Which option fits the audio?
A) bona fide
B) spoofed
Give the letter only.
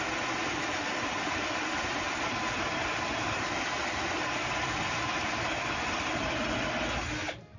A